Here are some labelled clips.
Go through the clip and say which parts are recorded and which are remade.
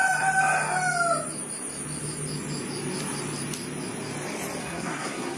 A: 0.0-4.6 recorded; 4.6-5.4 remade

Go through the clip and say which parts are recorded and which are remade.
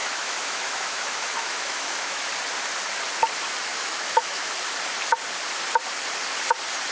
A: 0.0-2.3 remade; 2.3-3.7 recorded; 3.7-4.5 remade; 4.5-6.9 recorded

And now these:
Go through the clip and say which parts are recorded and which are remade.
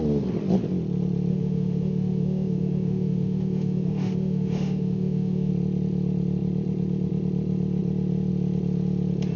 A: 0.0-1.3 recorded; 1.3-5.5 remade; 5.5-9.4 recorded